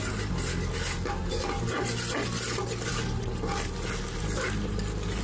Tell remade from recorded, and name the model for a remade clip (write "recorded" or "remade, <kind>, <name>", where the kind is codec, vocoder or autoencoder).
recorded